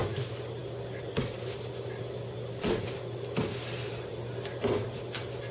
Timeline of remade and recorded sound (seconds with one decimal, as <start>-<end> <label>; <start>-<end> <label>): 0.0-5.5 recorded